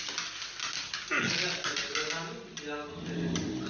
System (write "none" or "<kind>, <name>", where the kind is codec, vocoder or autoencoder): none